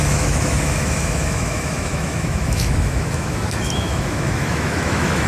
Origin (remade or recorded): remade